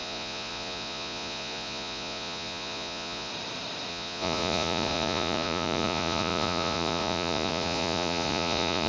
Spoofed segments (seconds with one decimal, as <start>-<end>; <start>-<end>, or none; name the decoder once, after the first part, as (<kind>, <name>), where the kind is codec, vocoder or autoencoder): 0.0-3.3 (vocoder, Vocos); 3.9-8.9